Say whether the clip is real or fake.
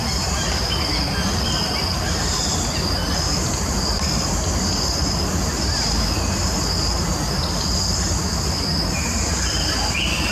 real